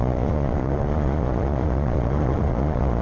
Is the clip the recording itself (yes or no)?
no